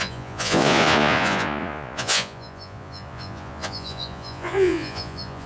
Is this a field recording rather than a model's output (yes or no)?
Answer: no